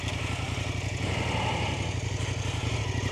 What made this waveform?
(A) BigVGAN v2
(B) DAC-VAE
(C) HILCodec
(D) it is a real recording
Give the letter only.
D